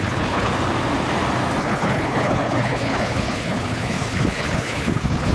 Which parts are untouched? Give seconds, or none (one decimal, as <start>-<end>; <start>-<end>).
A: 0.5-1.6